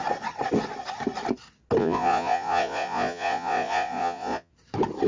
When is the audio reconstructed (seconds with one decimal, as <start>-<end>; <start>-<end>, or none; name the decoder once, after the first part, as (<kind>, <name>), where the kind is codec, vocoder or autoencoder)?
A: 1.8-4.5 (vocoder, Vocos)